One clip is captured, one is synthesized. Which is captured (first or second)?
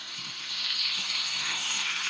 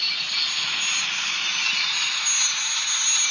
second